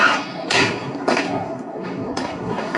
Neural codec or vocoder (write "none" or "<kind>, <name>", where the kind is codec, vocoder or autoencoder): codec, SNAC